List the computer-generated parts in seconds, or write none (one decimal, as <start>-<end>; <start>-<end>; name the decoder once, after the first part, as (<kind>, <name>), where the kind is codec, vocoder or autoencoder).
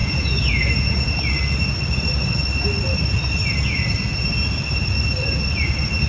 0.0-1.2 (vocoder, Vocos)